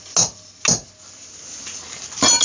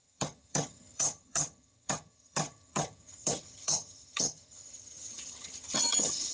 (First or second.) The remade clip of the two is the second